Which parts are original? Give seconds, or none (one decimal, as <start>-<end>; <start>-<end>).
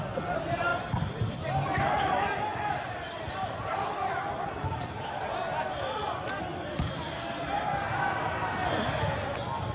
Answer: 0.0-9.7